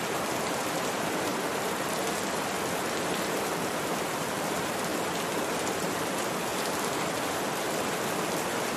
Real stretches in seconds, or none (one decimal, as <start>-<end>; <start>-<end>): 0.0-8.8